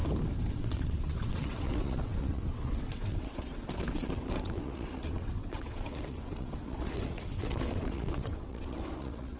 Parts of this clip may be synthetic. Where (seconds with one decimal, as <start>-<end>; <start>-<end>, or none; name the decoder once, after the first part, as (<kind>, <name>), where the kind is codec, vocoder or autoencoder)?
0.5-9.4 (vocoder, WaveNeXt)